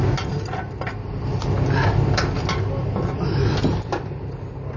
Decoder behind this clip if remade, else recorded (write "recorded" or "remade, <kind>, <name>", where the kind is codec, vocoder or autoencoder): recorded